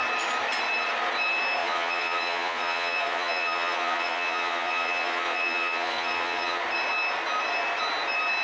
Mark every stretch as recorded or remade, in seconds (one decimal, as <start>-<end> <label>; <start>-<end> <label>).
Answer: 0.0-1.6 recorded; 1.6-6.6 remade; 6.6-8.4 recorded

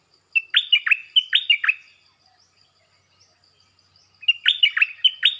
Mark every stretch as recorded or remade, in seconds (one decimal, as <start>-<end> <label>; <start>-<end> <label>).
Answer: 0.0-5.4 recorded

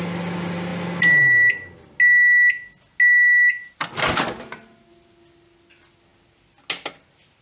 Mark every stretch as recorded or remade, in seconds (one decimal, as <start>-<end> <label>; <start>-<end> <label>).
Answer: 0.0-7.4 recorded

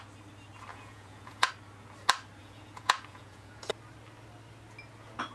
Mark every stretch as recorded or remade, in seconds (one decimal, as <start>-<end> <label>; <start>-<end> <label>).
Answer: 0.0-0.7 recorded; 0.7-1.5 remade; 1.5-2.4 recorded; 2.4-3.7 remade; 3.7-5.3 recorded

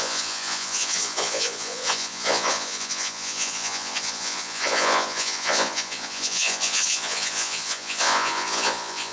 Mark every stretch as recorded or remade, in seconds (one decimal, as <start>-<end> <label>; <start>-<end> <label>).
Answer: 0.0-9.1 remade